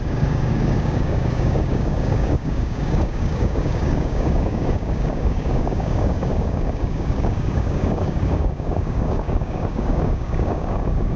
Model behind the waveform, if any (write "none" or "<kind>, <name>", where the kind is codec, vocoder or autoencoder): codec, DAC